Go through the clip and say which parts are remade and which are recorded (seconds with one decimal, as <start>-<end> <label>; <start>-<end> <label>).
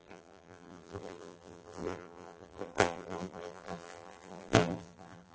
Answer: 0.0-5.3 remade